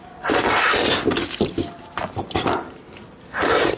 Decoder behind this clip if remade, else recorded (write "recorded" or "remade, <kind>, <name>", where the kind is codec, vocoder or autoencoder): recorded